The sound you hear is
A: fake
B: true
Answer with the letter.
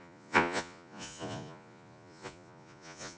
A